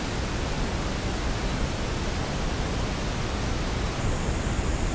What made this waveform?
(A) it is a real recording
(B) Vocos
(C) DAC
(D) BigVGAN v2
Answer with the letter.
A